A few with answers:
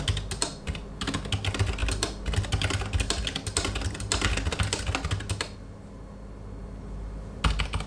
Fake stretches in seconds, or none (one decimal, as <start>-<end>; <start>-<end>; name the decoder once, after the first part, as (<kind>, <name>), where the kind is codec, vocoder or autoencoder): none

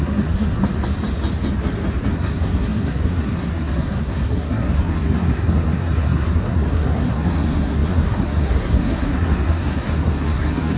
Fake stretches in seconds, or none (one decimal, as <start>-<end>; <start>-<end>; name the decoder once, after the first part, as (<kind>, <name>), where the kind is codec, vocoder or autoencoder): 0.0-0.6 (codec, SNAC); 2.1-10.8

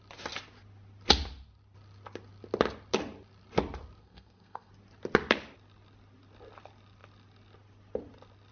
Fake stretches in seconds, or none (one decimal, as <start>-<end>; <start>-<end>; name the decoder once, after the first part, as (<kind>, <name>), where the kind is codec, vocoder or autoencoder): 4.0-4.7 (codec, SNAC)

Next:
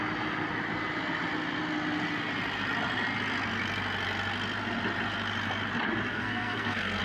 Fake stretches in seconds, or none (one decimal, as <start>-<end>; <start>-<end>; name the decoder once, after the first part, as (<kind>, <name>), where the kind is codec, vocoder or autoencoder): 6.1-7.0 (codec, SNAC)